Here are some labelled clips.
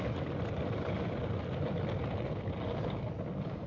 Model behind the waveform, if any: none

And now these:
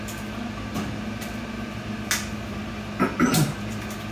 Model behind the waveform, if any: none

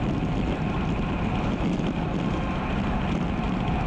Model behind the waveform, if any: none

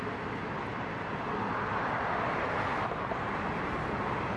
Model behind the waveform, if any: none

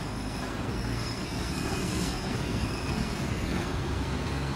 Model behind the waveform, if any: codec, SNAC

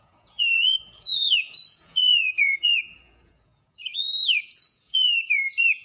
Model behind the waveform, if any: vocoder, Vocos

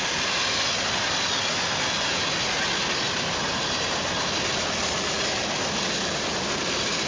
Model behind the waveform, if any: none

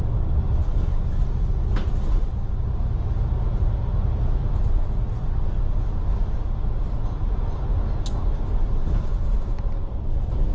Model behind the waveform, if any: none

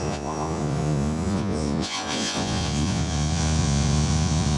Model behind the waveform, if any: vocoder, Vocos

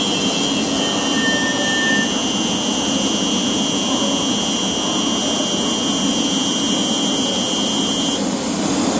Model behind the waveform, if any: none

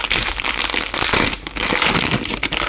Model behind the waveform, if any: none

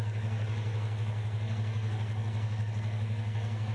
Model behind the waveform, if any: codec, SNAC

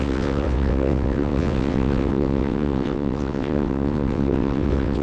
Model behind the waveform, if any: vocoder, WaveNeXt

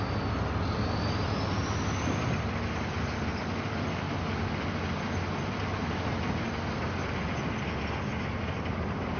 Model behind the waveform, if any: none